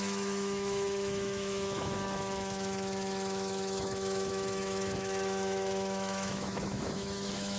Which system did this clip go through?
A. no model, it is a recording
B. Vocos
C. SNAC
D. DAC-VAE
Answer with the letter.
D